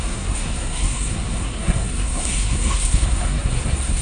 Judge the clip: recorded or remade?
remade